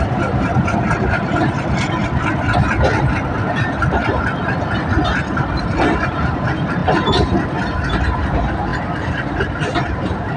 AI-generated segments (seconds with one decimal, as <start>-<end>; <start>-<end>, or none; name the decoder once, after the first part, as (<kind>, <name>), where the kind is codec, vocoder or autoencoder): 0.0-2.0 (vocoder, BigVGAN v2); 5.6-6.8; 7.9-8.7; 10.0-10.4